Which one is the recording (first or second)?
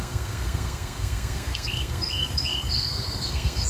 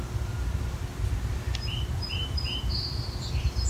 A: second